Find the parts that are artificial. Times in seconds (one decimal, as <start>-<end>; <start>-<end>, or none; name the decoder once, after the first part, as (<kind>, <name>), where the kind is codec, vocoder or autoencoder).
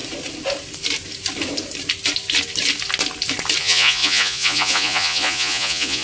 3.6-6.0 (vocoder, Vocos)